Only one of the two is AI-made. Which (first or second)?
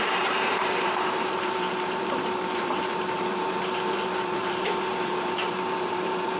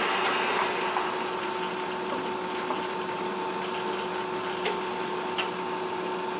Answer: first